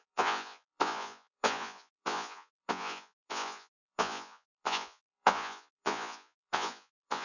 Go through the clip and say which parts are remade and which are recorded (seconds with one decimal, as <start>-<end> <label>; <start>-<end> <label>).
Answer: 0.0-7.2 remade